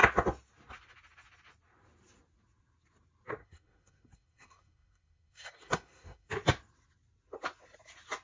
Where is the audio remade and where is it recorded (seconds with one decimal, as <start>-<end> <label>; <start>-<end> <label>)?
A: 0.0-3.4 recorded; 3.4-6.3 remade; 6.3-8.2 recorded